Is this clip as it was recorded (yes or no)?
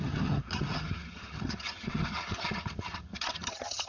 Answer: no